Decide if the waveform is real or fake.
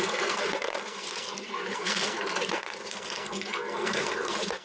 fake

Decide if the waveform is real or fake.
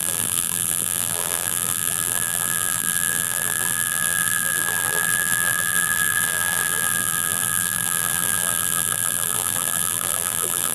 fake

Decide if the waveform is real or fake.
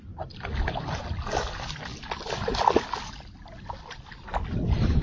real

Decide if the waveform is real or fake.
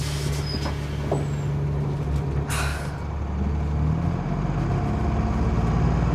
real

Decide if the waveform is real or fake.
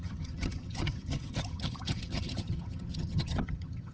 fake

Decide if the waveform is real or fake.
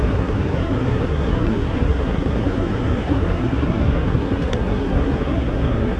fake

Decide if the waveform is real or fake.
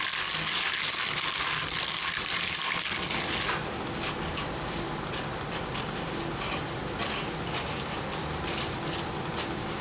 real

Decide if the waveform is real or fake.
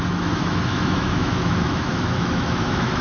fake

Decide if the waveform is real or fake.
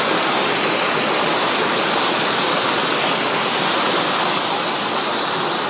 real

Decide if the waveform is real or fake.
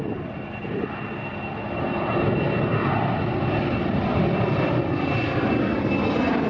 real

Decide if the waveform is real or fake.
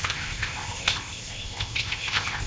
fake